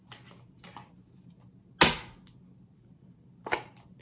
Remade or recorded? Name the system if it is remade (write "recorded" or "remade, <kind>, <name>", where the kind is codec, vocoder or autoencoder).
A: recorded